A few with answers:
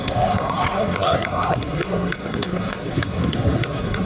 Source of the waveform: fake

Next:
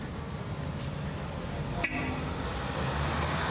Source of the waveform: real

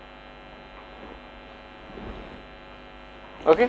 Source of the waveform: real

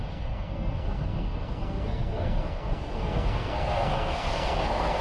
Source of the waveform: fake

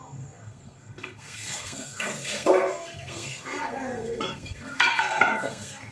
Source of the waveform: fake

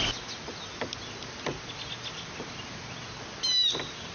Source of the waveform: real